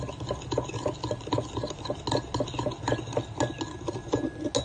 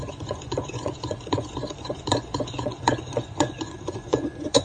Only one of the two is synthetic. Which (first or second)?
second